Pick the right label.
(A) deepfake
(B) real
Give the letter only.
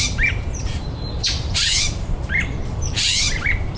A